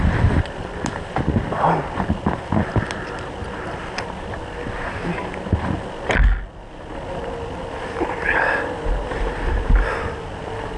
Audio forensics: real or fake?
real